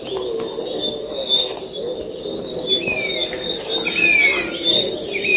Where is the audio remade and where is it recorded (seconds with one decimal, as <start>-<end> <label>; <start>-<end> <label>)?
0.0-5.4 recorded